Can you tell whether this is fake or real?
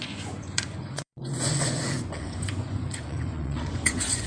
fake